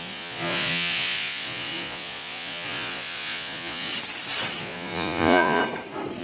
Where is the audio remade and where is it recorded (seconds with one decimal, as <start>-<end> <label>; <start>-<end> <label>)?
0.0-3.9 remade; 3.9-4.6 recorded; 4.6-5.6 remade; 5.6-6.2 recorded